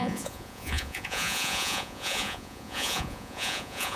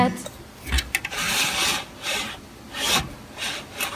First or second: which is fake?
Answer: first